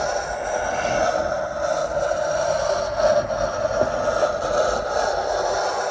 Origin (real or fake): real